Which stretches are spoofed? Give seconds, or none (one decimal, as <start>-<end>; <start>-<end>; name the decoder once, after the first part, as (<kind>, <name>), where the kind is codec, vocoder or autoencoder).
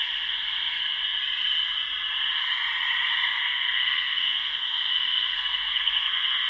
0.0-0.8 (codec, SNAC); 3.3-6.5